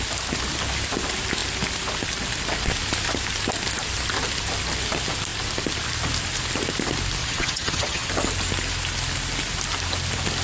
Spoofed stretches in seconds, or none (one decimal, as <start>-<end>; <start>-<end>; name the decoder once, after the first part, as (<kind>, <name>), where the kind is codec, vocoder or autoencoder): 7.2-8.1 (vocoder, HiFi-GAN)